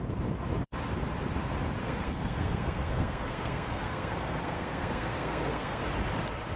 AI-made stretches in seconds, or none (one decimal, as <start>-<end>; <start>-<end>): 1.8-5.8